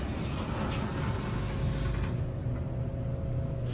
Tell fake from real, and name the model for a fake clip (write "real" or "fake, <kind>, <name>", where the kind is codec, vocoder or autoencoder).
real